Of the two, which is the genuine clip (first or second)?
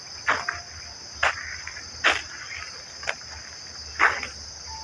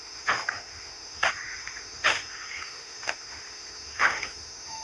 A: first